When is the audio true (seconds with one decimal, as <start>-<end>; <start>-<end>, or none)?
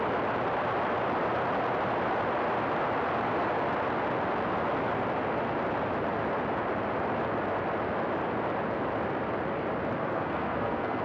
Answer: 0.0-10.0